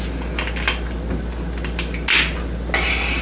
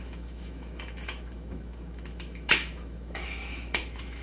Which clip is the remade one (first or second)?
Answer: second